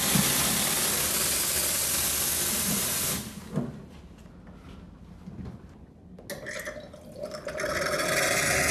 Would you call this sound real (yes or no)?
yes